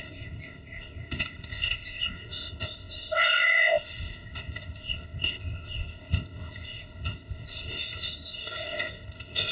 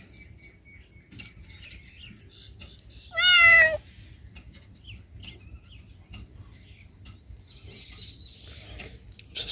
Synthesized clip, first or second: first